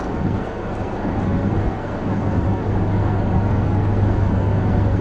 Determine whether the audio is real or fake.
fake